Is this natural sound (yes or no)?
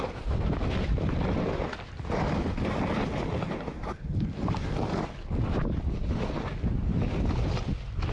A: yes